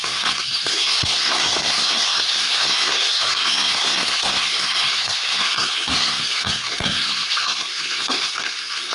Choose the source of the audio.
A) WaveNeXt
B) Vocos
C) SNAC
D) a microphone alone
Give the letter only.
C